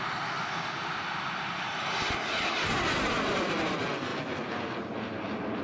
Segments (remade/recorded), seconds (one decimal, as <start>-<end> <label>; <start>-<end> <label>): 0.0-5.6 recorded